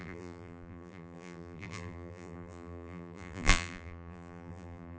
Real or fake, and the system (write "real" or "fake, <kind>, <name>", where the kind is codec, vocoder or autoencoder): fake, vocoder, BigVGAN v2